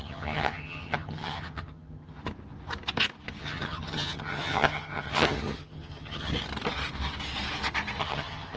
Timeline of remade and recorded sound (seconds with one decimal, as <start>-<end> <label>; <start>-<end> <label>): 0.0-2.2 remade; 2.2-3.4 recorded; 3.4-6.3 remade; 6.3-8.0 recorded; 8.0-8.6 remade